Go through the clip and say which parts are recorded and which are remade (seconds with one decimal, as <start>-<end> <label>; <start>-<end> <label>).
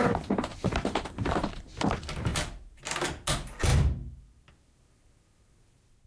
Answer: 0.0-0.5 recorded; 0.5-1.6 remade; 1.6-2.3 recorded; 2.3-2.8 remade; 2.8-6.1 recorded